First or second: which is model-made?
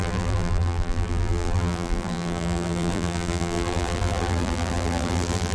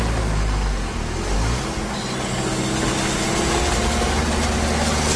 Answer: first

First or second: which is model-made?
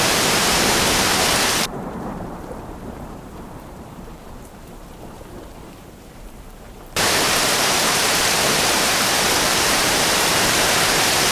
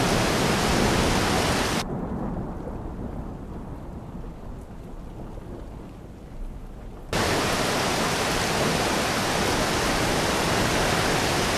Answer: first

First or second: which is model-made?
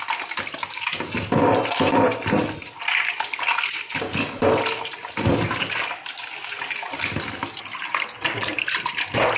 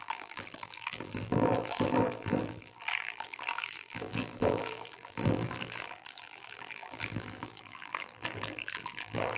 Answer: second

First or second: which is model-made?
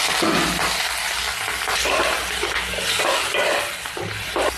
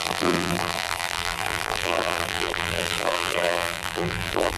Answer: second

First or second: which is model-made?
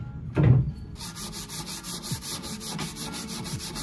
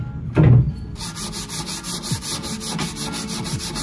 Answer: first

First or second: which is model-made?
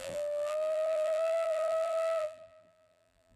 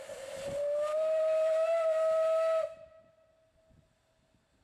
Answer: first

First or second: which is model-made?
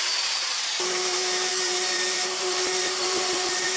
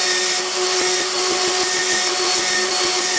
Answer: first